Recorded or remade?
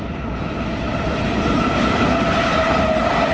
remade